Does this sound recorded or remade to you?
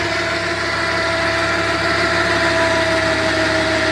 recorded